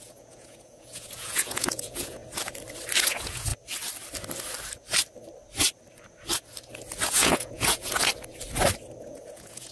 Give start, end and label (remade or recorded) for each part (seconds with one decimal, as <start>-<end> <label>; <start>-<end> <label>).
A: 0.0-2.2 remade; 2.2-3.0 recorded; 3.0-3.5 remade; 3.5-7.1 recorded; 7.1-8.1 remade; 8.1-9.0 recorded; 9.0-9.7 remade